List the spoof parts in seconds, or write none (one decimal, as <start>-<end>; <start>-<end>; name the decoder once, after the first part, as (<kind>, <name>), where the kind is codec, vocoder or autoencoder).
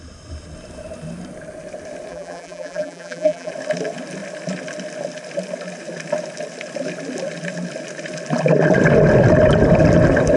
2.1-3.5 (vocoder, BigVGAN v2)